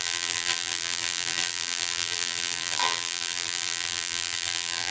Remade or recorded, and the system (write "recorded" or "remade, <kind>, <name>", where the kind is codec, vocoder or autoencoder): remade, vocoder, BigVGAN v2